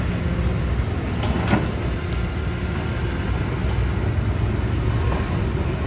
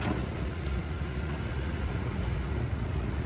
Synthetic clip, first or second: second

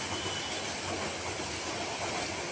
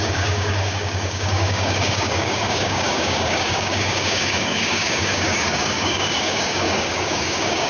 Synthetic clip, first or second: second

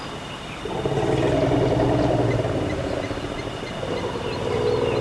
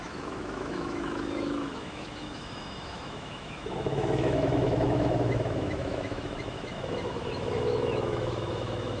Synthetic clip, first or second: second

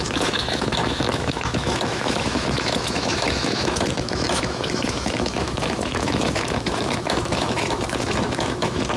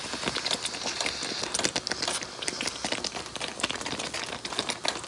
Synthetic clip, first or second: first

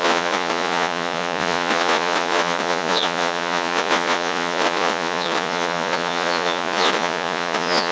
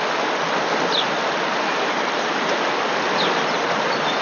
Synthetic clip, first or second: first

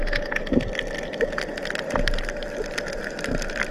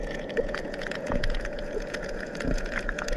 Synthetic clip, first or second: second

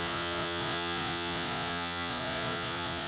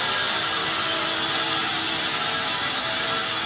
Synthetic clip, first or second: first